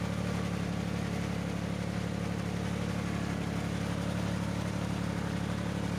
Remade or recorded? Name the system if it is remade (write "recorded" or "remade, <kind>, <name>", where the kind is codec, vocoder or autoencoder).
recorded